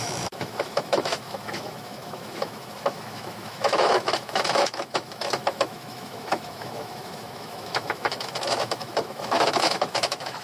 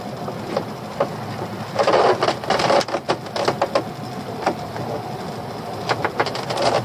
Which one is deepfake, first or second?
first